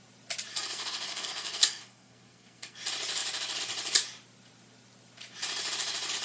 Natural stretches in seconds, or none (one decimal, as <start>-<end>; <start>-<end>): 0.0-0.5; 2.8-6.2